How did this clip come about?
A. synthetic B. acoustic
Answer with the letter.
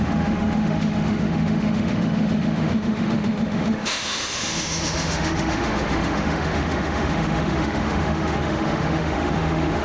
A